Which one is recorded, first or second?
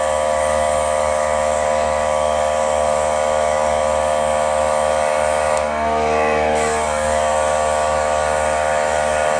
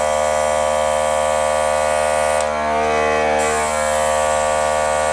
second